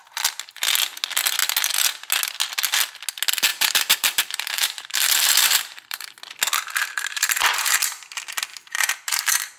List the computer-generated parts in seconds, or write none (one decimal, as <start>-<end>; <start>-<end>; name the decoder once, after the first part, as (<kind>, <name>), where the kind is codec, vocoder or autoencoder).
3.5-6.1 (vocoder, BigVGAN v2); 6.8-7.9; 8.5-9.6

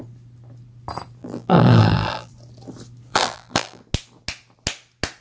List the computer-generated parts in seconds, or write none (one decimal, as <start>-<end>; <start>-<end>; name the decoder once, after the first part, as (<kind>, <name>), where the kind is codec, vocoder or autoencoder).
1.2-2.3 (vocoder, BigVGAN v2); 3.1-3.8

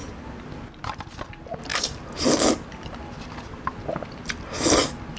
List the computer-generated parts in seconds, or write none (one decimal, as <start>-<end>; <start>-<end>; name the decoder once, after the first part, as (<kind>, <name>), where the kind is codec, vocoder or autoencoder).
none